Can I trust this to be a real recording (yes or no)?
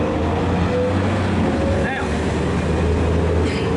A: yes